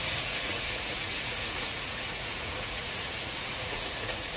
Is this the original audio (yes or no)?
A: no